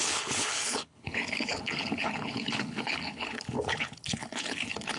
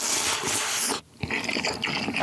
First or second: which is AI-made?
first